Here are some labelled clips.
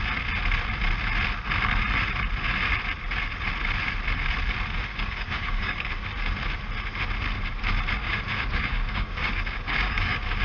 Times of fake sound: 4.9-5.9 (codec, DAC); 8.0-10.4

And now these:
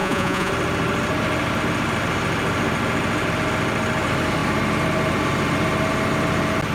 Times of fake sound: 0.0-0.5 (vocoder, Vocos)

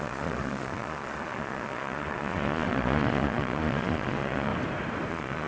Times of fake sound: 0.0-4.5 (vocoder, Vocos); 5.1-5.5